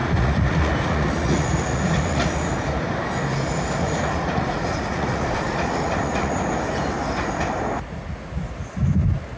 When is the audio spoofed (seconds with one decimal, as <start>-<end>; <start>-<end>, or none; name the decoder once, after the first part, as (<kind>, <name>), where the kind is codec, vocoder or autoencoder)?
0.0-2.5 (vocoder, Vocos); 3.8-6.4